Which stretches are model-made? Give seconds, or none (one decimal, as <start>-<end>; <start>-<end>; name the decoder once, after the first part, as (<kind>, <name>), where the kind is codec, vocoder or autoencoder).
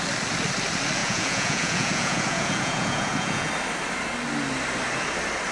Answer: 1.0-3.5 (vocoder, Vocos)